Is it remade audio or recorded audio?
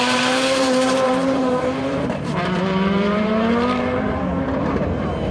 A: remade